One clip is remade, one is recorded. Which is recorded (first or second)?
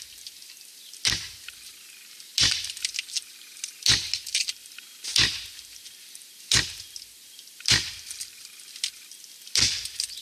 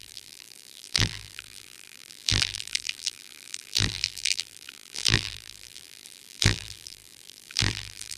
first